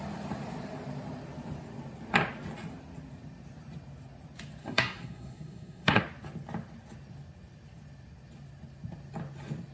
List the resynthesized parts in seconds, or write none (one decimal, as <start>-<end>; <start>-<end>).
4.6-6.0